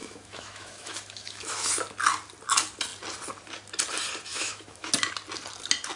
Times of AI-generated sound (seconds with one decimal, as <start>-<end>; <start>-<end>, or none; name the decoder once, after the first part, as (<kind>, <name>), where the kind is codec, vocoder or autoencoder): 0.0-1.7 (autoencoder, DAC-VAE); 4.3-4.9